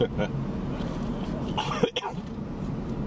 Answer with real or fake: real